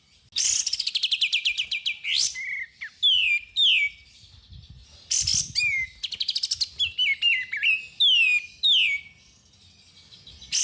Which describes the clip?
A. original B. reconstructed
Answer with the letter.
A